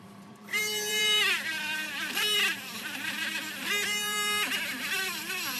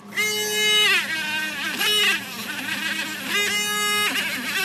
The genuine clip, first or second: second